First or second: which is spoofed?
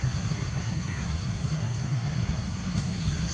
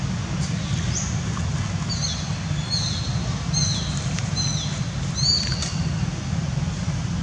first